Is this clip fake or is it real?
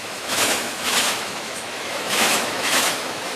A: fake